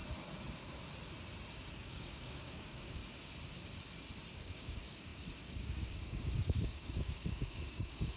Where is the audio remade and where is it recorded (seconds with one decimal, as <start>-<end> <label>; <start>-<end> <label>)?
0.0-1.7 recorded; 1.7-3.0 remade; 3.0-4.3 recorded; 4.3-8.2 remade